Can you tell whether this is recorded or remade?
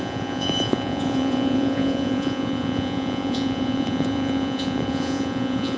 remade